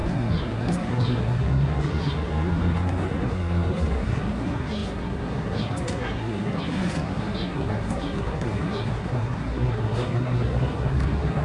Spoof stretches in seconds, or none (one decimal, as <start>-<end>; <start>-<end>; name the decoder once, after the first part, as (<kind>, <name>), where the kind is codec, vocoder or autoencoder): 0.0-11.4 (codec, SNAC)